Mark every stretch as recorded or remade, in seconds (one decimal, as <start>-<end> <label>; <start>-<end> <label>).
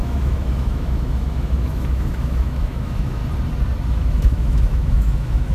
0.0-3.2 remade; 3.2-3.9 recorded; 3.9-5.5 remade